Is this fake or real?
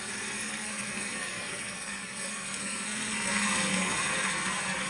fake